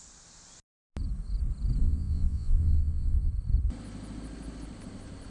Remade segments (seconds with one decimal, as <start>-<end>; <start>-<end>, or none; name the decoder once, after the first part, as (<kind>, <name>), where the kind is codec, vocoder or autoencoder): 1.8-3.3 (vocoder, Vocos)